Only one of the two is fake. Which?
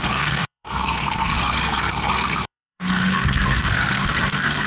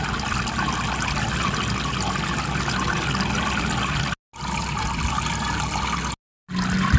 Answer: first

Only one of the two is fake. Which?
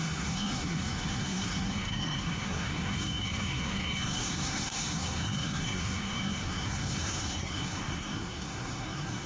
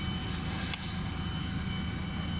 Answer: first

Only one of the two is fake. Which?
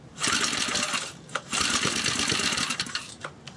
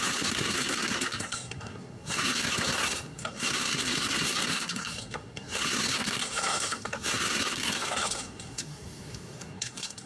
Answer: second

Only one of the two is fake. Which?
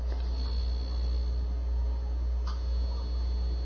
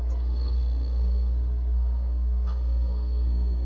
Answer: second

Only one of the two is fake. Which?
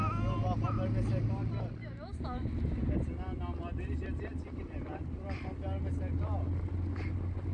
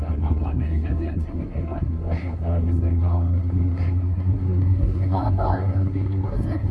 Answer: second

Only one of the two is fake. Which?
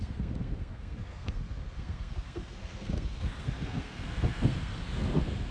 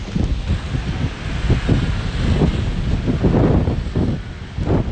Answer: first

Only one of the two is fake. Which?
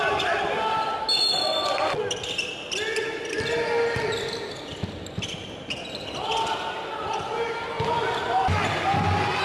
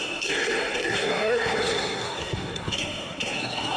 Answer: second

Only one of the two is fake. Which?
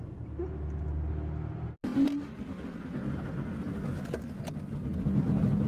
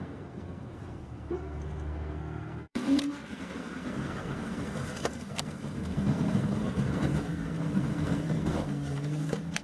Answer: second